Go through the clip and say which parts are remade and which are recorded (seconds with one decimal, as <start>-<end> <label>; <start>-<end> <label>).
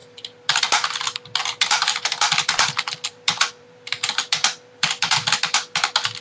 0.0-0.6 remade; 0.6-1.4 recorded; 1.4-5.1 remade; 5.1-6.2 recorded